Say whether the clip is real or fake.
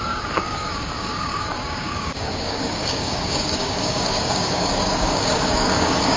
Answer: fake